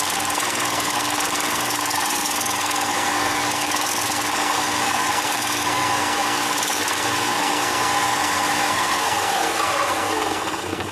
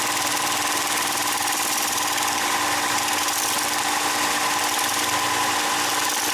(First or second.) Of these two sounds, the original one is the second